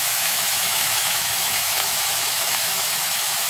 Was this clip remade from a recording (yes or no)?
yes